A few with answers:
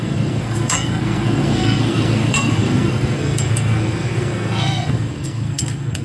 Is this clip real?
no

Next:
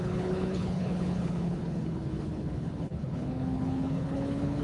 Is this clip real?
no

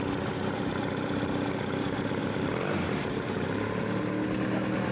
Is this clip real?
yes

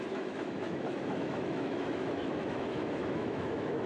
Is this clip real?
no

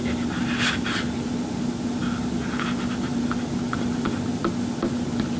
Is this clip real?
yes